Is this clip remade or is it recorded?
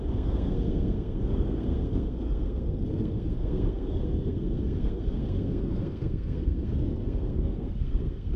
remade